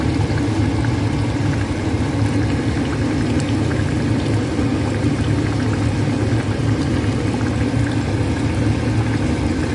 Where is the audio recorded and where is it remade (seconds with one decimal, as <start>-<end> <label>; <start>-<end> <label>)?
0.0-9.7 recorded